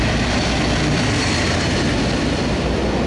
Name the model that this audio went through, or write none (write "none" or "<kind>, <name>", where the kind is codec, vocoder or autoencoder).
none